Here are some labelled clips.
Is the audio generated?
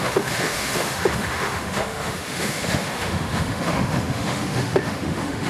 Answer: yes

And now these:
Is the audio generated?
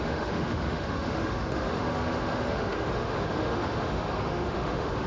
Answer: yes